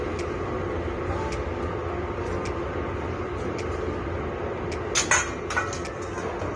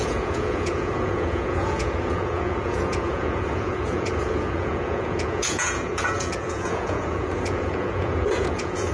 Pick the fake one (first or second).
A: second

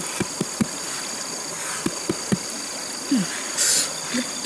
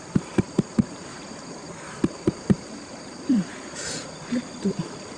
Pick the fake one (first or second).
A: second